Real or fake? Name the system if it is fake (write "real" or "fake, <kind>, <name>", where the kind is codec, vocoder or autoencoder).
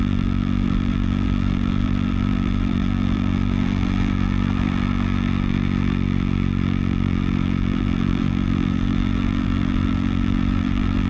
fake, vocoder, BigVGAN v2